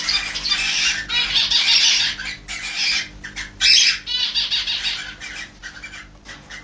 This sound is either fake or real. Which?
real